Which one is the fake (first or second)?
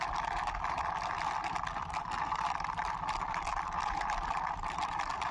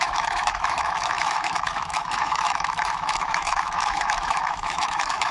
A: second